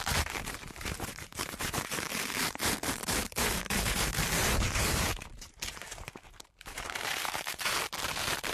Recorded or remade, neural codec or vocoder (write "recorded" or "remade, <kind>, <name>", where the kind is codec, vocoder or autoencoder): remade, vocoder, BigVGAN v2